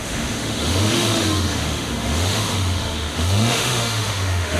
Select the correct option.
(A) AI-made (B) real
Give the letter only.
A